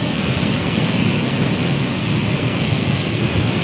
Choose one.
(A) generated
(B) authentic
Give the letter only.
A